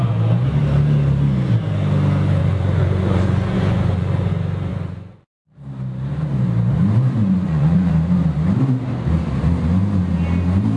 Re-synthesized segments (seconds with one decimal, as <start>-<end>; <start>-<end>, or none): 2.4-4.3; 4.7-5.4; 7.2-7.9